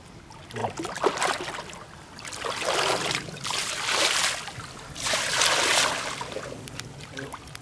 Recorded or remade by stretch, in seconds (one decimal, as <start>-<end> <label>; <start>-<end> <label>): 0.0-7.6 recorded